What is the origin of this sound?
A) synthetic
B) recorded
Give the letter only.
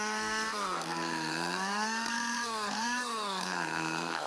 A